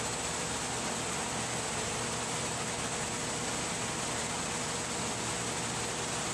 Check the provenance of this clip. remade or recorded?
recorded